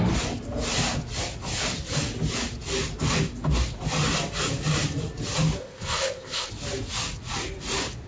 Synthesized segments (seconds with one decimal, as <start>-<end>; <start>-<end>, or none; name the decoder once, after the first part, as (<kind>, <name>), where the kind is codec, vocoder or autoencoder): 5.6-6.5 (codec, ZipCodec)